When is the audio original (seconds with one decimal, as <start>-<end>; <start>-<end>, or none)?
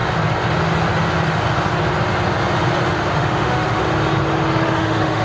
0.0-3.1; 3.8-4.5